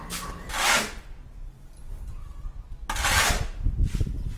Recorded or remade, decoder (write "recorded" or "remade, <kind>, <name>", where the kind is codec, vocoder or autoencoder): recorded